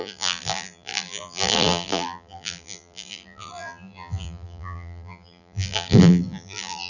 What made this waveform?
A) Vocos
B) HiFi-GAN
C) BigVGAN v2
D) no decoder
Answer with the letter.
C